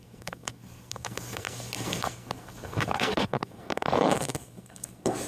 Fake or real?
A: fake